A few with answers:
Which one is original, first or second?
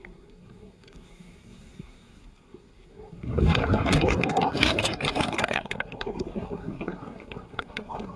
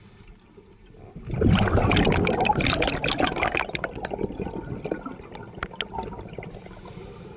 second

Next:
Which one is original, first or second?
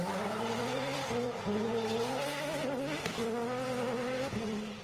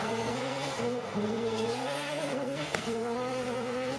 first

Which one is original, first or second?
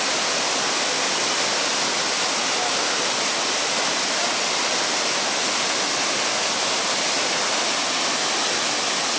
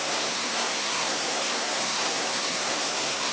first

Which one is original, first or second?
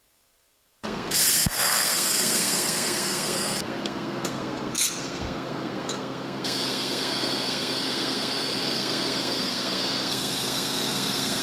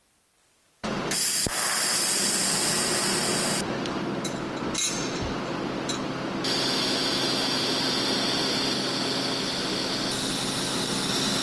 second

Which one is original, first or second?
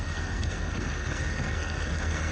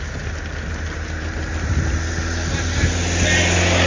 second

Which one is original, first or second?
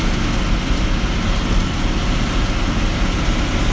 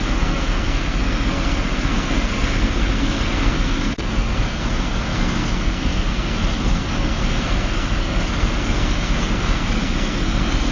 first